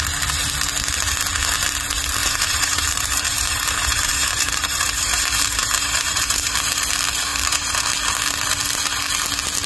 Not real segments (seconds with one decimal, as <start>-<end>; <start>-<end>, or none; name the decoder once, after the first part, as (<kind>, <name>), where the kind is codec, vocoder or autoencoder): 2.2-6.5 (vocoder, BigVGAN v2); 7.3-7.9